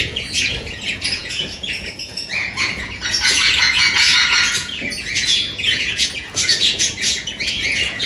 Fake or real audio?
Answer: fake